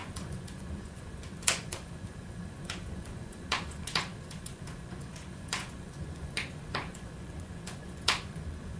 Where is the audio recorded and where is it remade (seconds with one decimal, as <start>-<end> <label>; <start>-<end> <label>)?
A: 0.0-8.8 remade